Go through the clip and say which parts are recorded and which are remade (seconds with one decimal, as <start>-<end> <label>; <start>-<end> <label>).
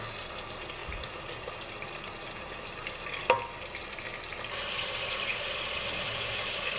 0.0-6.8 recorded